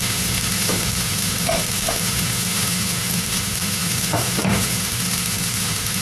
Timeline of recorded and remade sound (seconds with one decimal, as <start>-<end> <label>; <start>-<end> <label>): 0.0-6.0 remade